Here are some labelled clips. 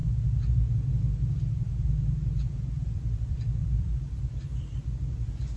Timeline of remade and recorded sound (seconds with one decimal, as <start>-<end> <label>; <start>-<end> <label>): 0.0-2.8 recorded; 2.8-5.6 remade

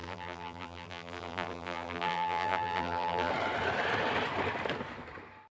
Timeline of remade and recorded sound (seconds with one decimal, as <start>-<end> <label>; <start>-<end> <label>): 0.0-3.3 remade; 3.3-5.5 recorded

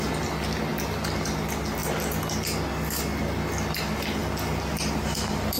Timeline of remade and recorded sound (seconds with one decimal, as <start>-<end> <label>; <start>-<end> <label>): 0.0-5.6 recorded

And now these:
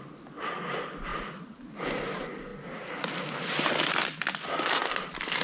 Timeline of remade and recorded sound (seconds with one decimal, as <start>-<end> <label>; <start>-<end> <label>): 0.0-5.4 recorded

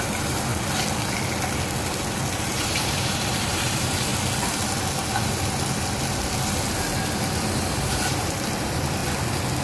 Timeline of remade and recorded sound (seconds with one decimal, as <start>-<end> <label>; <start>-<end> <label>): 0.0-0.5 remade; 0.5-2.5 recorded; 2.5-4.1 remade; 4.1-7.6 recorded; 7.6-9.0 remade; 9.0-9.6 recorded

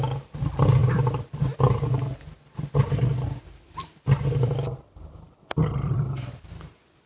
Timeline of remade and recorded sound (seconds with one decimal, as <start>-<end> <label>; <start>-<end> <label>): 0.0-0.8 recorded; 0.8-5.1 remade; 5.1-5.6 recorded; 5.6-6.1 remade; 6.1-7.1 recorded

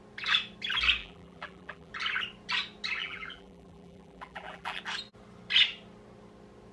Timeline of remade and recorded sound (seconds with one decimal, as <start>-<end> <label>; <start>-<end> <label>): 0.0-1.0 recorded; 1.0-1.9 remade; 1.9-3.0 recorded; 3.0-4.8 remade; 4.8-6.7 recorded